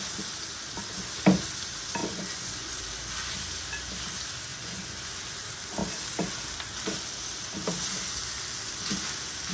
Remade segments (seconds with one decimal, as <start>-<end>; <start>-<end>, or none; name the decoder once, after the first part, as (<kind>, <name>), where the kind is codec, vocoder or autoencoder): 2.0-2.8 (vocoder, Vocos); 4.5-5.1